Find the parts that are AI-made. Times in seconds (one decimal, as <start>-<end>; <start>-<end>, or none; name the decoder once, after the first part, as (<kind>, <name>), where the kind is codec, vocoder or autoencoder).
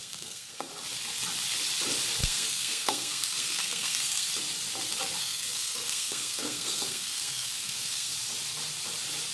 0.0-0.7 (codec, SNAC); 2.2-4.3; 5.2-8.1